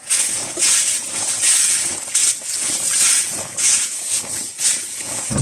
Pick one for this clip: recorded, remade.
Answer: remade